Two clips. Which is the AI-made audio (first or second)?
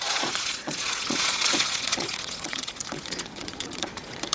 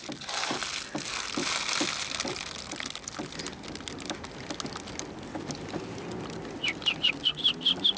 first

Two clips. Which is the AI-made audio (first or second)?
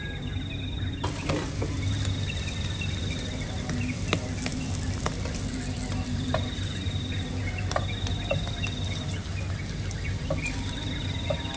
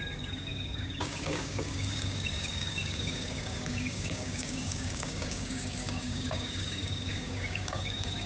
second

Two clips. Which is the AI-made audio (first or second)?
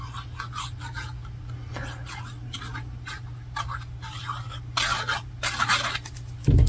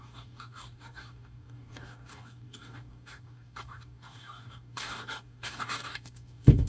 second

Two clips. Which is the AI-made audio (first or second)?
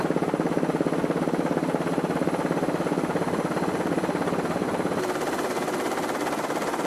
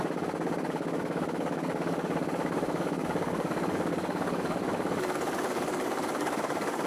second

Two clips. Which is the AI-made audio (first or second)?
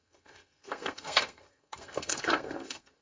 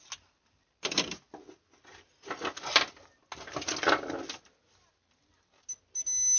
first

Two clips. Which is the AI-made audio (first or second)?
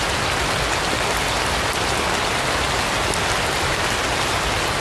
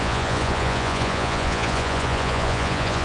second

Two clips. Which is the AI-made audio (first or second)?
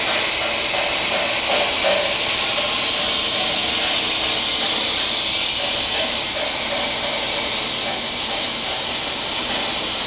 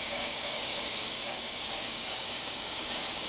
second